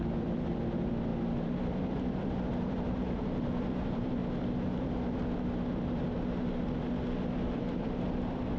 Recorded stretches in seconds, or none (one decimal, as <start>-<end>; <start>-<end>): 4.2-7.1